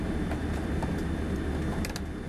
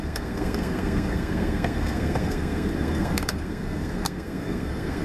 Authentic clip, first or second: first